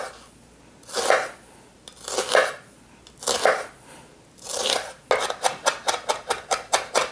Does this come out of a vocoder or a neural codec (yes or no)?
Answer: no